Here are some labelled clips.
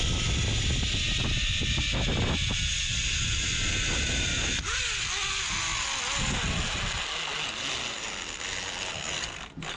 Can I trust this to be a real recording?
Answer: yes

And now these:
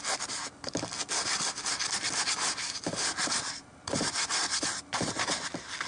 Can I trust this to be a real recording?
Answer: yes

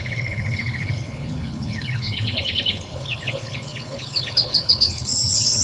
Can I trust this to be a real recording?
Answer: no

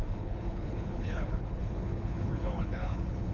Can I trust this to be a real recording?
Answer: no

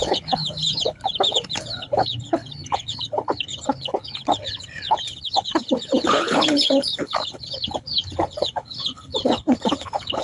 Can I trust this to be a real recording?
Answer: no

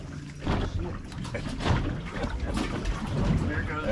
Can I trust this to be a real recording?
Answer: yes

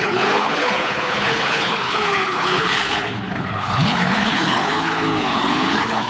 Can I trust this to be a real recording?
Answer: no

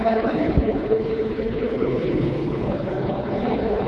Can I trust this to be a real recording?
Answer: no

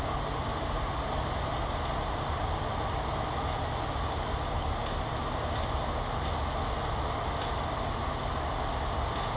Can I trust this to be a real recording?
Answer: yes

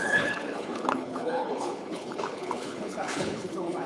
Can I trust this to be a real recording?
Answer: no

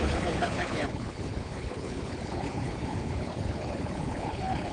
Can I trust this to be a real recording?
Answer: no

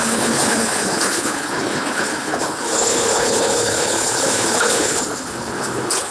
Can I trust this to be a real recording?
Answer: no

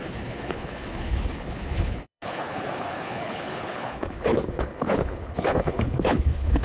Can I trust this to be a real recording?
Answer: no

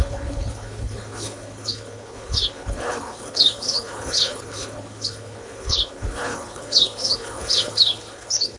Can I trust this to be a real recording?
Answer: no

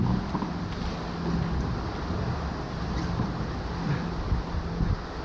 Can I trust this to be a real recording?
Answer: yes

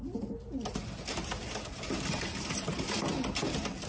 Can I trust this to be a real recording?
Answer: yes